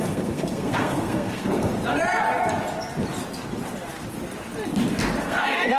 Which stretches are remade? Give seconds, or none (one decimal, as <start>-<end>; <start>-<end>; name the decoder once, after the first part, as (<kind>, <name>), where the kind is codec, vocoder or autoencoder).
0.0-1.7 (codec, SNAC); 5.2-5.8